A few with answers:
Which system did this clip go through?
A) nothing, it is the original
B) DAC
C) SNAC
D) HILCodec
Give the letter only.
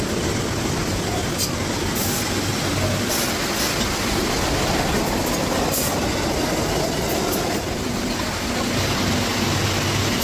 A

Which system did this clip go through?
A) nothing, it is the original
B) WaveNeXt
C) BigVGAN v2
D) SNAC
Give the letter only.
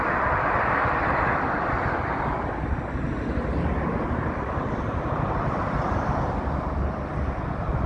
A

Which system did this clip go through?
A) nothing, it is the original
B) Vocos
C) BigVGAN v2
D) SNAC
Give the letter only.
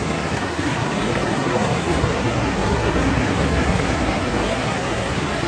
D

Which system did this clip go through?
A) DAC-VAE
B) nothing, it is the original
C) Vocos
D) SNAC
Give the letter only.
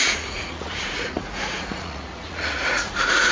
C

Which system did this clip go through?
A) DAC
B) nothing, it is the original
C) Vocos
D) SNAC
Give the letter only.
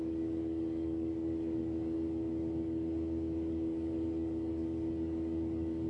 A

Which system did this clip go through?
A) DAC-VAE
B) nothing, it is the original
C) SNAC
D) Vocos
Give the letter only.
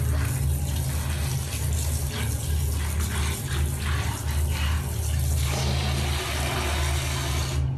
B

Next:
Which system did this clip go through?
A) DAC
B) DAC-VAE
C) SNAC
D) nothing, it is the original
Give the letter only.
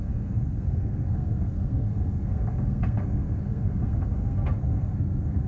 C